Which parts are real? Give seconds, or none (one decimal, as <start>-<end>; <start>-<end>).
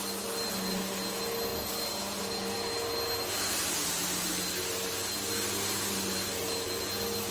0.0-7.3